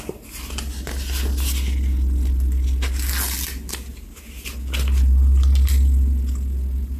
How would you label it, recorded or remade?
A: recorded